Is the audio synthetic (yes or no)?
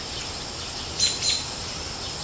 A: no